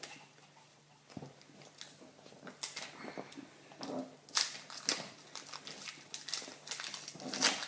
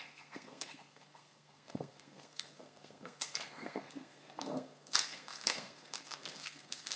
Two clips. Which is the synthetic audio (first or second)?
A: second